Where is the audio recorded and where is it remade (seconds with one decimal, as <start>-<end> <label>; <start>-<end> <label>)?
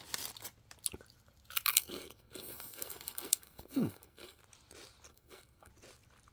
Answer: 0.0-1.7 recorded; 1.7-4.4 remade; 4.4-5.1 recorded; 5.1-5.7 remade; 5.7-6.3 recorded